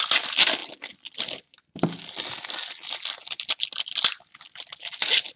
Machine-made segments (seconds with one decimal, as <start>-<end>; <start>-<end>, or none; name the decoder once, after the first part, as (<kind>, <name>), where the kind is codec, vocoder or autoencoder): none